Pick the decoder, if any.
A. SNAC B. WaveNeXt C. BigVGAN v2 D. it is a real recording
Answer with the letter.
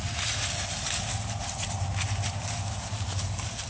D